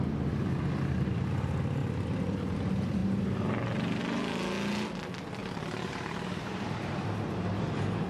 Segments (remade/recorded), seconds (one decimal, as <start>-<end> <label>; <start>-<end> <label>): 0.0-1.8 recorded; 1.8-2.5 remade; 2.5-3.0 recorded; 3.0-4.0 remade; 4.0-5.4 recorded; 5.4-8.1 remade